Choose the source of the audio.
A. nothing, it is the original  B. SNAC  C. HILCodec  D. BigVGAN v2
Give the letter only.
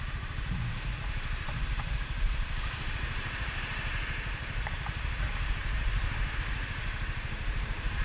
D